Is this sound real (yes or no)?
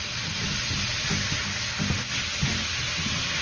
yes